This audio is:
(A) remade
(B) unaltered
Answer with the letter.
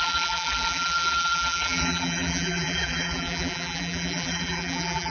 A